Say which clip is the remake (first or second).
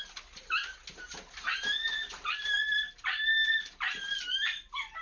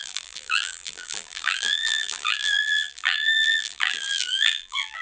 second